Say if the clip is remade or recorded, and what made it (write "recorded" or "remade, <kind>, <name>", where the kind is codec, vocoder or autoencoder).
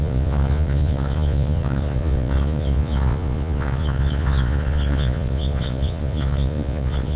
remade, vocoder, Vocos